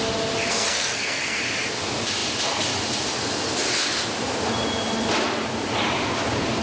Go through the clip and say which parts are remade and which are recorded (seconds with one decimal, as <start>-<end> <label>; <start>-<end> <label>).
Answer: 0.0-0.5 recorded; 0.5-1.4 remade; 1.4-6.6 recorded